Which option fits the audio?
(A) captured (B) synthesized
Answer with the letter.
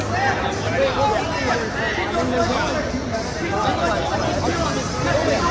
A